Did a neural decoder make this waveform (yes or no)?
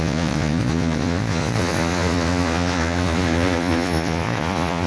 yes